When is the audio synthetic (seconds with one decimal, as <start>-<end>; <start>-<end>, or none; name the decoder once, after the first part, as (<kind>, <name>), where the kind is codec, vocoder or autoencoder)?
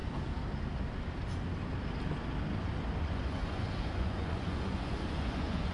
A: 3.0-5.7 (vocoder, Vocos)